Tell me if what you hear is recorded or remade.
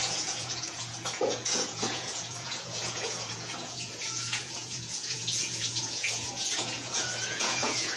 remade